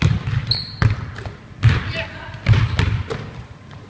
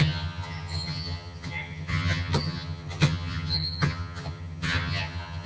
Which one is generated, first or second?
second